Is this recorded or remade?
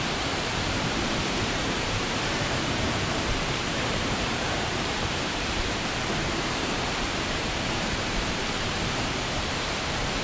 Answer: remade